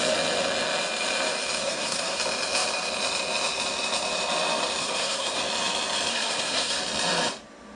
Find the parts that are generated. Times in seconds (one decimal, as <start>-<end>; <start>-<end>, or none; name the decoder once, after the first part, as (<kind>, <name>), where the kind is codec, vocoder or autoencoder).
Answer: 1.6-2.2 (codec, SNAC); 4.8-5.4; 6.1-6.8